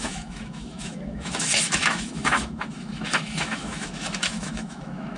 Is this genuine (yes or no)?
no